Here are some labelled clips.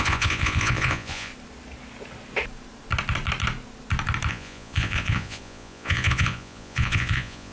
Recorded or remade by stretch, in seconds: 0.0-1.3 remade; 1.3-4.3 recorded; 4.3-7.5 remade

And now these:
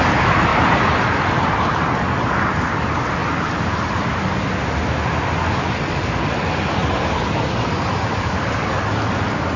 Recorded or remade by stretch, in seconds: 0.0-0.5 recorded; 0.5-1.7 remade; 1.7-3.2 recorded; 3.2-4.2 remade; 4.2-6.8 recorded; 6.8-8.6 remade; 8.6-9.6 recorded

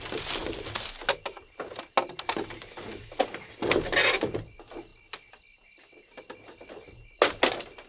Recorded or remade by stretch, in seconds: 0.0-7.9 recorded

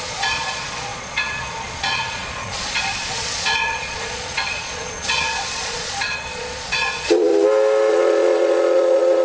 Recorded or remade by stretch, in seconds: 0.0-7.3 remade; 7.3-7.9 recorded; 7.9-9.2 remade

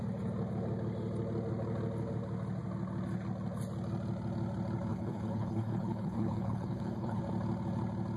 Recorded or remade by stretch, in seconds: 0.0-4.9 recorded; 4.9-7.2 remade; 7.2-8.2 recorded

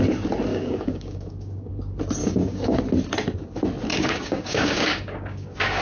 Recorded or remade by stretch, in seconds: 0.0-0.5 recorded; 0.5-1.7 remade; 1.7-2.2 recorded; 2.2-2.8 remade; 2.8-3.9 recorded; 3.9-5.8 remade

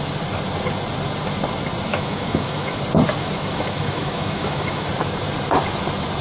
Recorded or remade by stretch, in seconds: 0.0-1.9 recorded; 1.9-2.8 remade; 2.8-3.2 recorded; 3.2-4.9 remade; 4.9-6.2 recorded

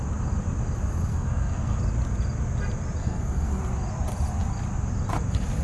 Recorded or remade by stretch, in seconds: 0.0-1.1 recorded; 1.1-1.8 remade; 1.8-3.0 recorded; 3.0-3.6 remade; 3.6-5.6 recorded